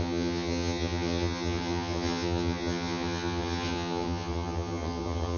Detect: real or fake fake